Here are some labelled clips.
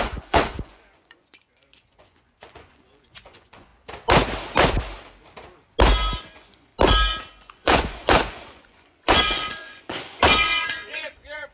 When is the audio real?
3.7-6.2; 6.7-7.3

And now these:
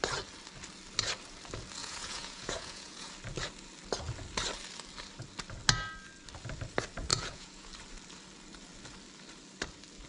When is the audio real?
0.0-1.8; 3.1-7.1; 7.7-10.1

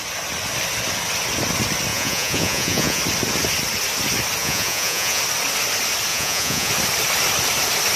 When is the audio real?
0.0-1.9; 3.0-4.4; 5.2-6.1; 6.7-8.0